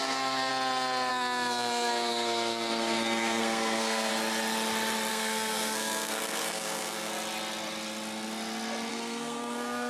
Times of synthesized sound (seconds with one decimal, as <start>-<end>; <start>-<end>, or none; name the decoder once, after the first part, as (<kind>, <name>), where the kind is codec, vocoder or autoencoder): 0.0-0.5 (codec, SNAC); 1.1-4.1; 5.1-7.1; 8.9-9.9

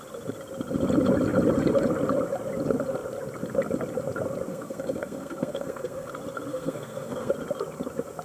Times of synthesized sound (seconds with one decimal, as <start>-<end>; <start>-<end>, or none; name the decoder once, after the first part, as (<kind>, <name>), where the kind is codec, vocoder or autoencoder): 4.5-6.1 (codec, SNAC); 6.5-7.3

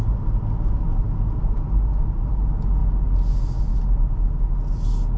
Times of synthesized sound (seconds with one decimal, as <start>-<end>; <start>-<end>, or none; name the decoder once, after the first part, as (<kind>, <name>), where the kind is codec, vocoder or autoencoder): none

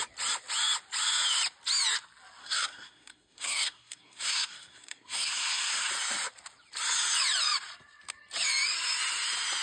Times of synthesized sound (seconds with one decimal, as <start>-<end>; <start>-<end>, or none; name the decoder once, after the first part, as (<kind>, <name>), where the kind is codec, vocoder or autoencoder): 2.4-5.9 (codec, SNAC)